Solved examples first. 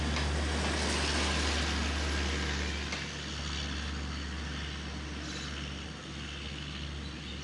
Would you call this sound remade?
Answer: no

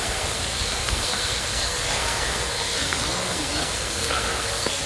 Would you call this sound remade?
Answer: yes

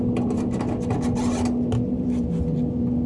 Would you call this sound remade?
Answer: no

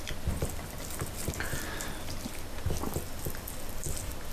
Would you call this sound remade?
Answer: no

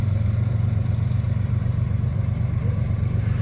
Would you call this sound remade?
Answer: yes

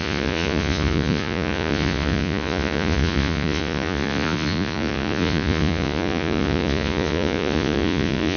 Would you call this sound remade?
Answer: yes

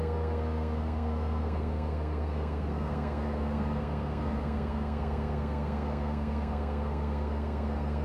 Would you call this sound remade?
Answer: yes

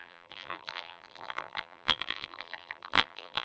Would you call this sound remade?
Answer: yes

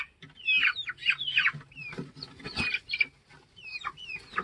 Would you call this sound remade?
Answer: no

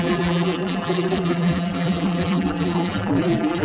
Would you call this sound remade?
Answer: yes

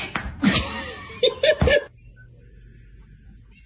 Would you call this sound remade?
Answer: no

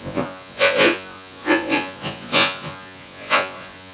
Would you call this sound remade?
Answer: yes